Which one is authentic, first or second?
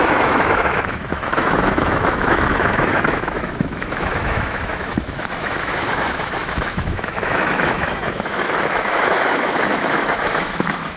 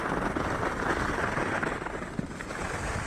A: second